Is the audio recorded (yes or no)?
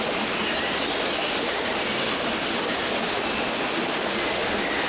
yes